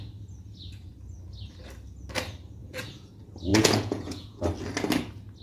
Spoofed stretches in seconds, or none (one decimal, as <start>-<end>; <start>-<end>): 2.6-3.1; 3.5-4.4